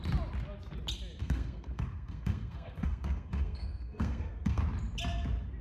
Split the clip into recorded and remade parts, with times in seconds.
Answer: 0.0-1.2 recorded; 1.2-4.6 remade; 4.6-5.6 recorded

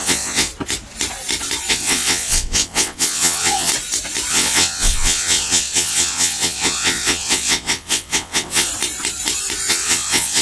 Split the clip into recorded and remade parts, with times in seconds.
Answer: 0.0-0.5 remade; 0.5-1.7 recorded; 1.7-3.7 remade; 3.7-4.3 recorded; 4.3-8.7 remade; 8.7-9.7 recorded; 9.7-10.4 remade

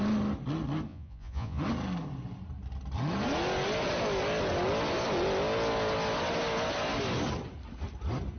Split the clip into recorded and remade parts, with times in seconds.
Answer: 0.0-0.9 recorded; 0.9-1.6 remade; 1.6-8.4 recorded

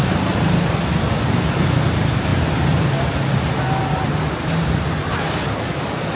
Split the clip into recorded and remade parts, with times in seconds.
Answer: 0.0-6.2 recorded